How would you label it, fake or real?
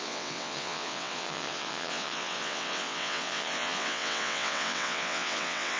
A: fake